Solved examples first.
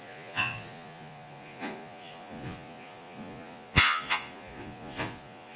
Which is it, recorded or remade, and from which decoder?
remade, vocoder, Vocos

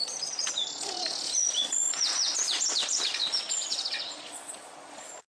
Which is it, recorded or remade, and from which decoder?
remade, vocoder, Vocos